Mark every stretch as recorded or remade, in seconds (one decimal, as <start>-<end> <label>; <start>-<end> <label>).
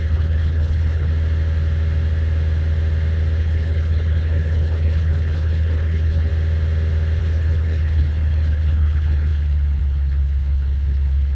0.0-1.1 remade; 1.1-3.4 recorded; 3.4-6.3 remade; 6.3-7.2 recorded; 7.2-11.3 remade